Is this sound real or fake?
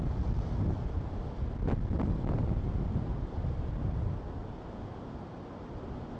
real